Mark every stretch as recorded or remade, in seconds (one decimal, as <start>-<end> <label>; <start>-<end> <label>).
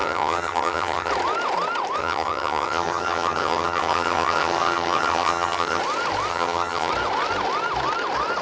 0.0-1.1 remade; 1.1-2.0 recorded; 2.0-5.8 remade; 5.8-6.3 recorded; 6.3-6.9 remade; 6.9-8.4 recorded